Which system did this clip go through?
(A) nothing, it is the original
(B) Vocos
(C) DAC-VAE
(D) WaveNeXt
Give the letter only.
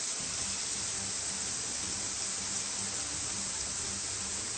A